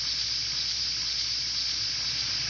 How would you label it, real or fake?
real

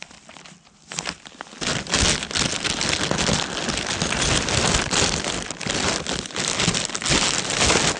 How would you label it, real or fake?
real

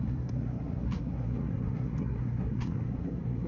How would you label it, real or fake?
fake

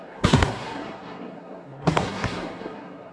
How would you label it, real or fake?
fake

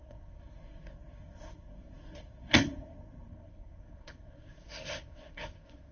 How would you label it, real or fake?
fake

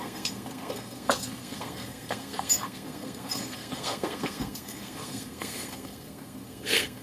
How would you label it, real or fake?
fake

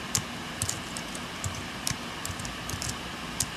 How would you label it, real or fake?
real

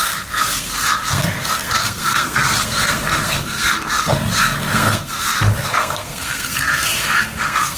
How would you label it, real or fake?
fake